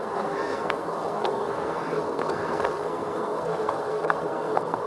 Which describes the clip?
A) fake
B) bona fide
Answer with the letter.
A